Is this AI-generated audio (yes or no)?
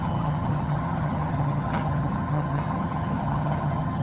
yes